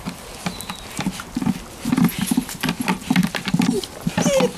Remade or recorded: recorded